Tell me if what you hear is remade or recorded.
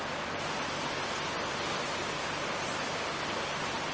recorded